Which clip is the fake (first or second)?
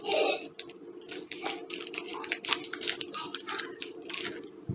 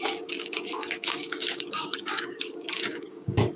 second